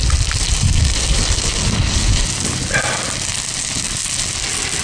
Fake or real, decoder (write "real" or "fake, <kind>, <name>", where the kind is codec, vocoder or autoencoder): real